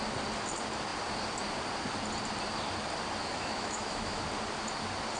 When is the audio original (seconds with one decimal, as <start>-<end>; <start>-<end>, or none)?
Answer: 0.0-3.2; 4.2-5.2

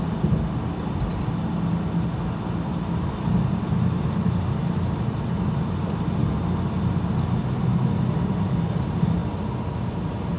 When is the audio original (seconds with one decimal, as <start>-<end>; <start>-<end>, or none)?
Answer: 0.0-10.4

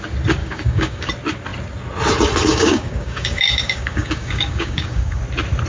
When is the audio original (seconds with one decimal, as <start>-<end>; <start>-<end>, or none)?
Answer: 0.0-0.4; 1.1-2.5; 5.2-5.7

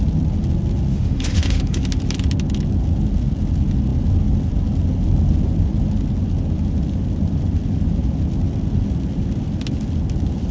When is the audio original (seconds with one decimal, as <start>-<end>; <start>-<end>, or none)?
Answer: 0.0-0.9; 1.8-10.5

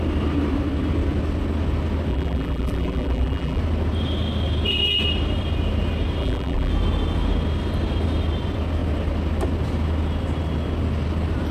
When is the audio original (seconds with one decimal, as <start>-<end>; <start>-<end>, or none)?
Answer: 0.0-2.1; 3.6-6.2; 6.7-11.5

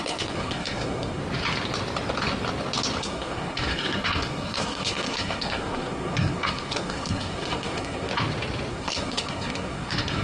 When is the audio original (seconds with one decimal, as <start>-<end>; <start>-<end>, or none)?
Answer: 1.2-3.0; 8.1-8.7

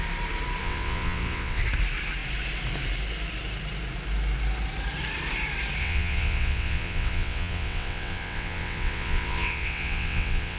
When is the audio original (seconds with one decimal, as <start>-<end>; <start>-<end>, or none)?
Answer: 0.0-0.6; 1.6-5.8

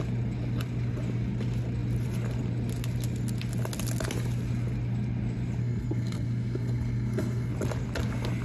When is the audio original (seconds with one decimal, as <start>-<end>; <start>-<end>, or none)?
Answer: 0.0-5.6; 7.5-8.4